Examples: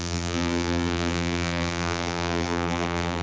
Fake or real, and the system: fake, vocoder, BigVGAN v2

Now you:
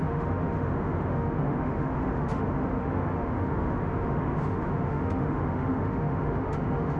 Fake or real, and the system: fake, autoencoder, DAC-VAE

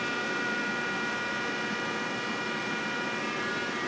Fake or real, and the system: fake, vocoder, BigVGAN v2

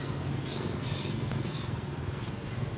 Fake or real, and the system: fake, codec, SNAC